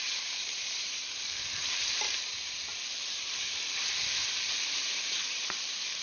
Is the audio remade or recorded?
remade